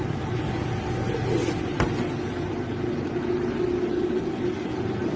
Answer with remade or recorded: recorded